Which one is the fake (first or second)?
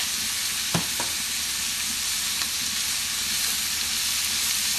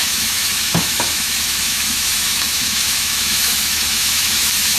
second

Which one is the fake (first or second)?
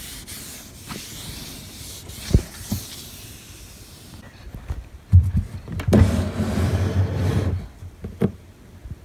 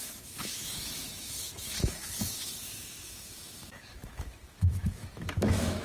second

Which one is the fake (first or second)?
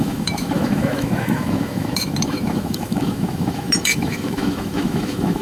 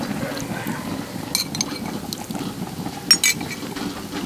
first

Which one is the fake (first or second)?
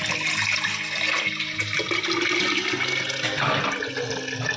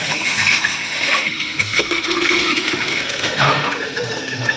second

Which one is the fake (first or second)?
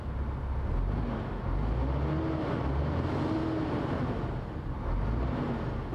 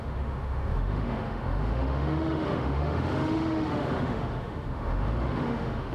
second